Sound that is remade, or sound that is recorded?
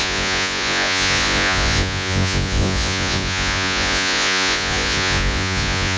remade